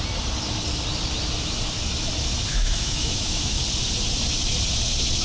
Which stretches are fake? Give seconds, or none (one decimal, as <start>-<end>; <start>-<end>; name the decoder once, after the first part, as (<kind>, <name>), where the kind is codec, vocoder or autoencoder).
2.5-3.6 (autoencoder, DAC-VAE)